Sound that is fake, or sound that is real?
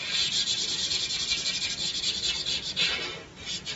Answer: real